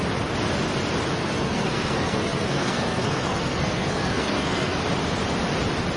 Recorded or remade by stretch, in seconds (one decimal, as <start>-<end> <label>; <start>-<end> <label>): 0.0-1.2 recorded; 1.2-4.8 remade; 4.8-6.0 recorded